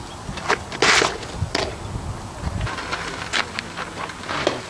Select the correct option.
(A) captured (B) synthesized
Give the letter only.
A